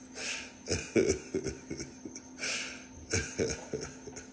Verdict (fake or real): real